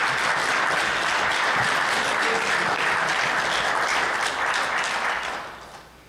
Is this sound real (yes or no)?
yes